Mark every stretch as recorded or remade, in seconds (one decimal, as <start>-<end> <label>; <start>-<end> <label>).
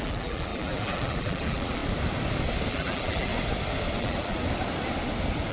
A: 0.0-1.8 remade; 1.8-2.7 recorded; 2.7-3.3 remade; 3.3-4.0 recorded; 4.0-4.4 remade; 4.4-5.5 recorded